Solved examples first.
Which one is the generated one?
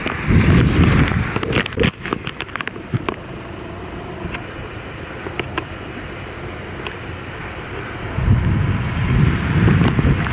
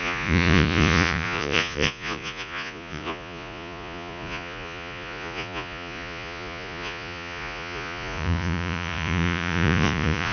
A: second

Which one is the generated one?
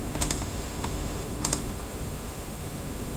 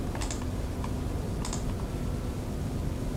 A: first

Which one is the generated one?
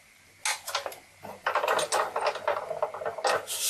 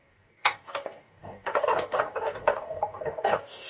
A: second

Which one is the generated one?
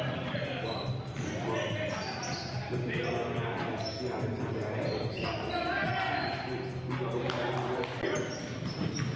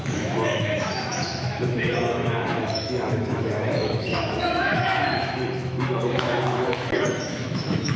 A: second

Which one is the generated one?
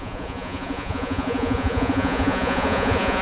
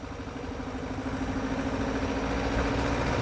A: first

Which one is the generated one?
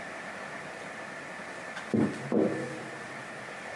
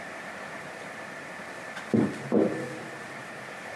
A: second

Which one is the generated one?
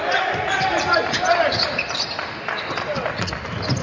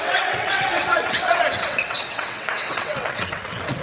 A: second